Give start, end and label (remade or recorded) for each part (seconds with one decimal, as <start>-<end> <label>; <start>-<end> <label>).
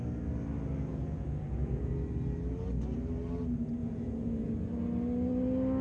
0.0-0.9 recorded; 0.9-1.9 remade; 1.9-3.8 recorded; 3.8-4.5 remade; 4.5-5.8 recorded